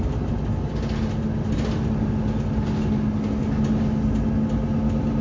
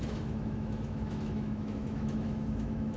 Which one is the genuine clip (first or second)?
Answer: first